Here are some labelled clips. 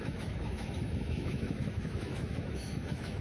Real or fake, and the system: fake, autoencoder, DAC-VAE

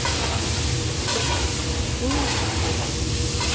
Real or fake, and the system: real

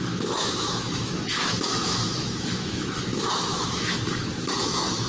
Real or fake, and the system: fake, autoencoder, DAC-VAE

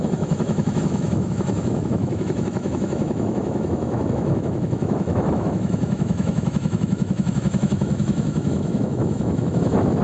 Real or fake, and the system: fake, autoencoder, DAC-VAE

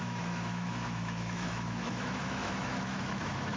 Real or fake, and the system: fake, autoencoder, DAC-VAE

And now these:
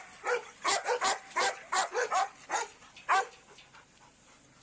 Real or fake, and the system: real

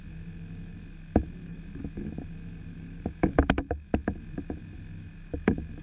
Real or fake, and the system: fake, autoencoder, DAC-VAE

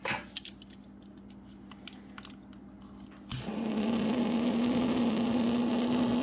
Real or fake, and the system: real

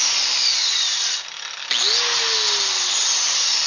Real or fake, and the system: real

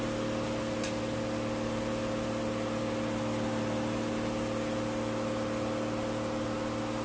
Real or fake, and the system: real